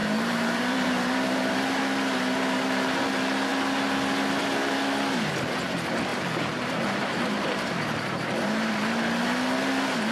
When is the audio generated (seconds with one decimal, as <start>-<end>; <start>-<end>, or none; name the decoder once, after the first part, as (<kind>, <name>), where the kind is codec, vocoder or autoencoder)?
0.0-1.8 (vocoder, BigVGAN v2); 6.1-8.7